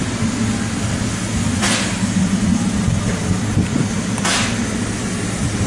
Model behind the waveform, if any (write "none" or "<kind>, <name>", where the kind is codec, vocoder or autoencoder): none